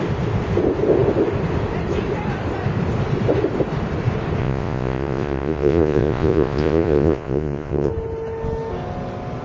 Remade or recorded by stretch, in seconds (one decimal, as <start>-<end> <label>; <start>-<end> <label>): 0.0-4.4 recorded; 4.4-7.9 remade; 7.9-9.4 recorded